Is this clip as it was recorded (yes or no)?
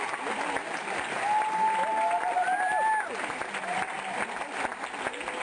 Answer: yes